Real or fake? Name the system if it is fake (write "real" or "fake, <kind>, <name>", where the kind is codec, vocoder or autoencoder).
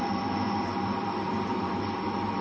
real